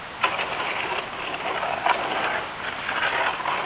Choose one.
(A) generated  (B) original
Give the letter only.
B